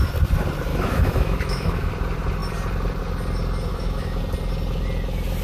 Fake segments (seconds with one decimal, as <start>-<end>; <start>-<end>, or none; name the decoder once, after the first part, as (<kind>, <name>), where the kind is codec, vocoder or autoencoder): 0.7-1.9 (autoencoder, DAC-VAE); 3.7-4.2